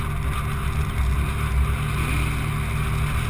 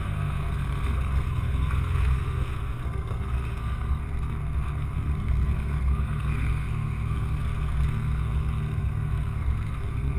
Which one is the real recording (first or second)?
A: first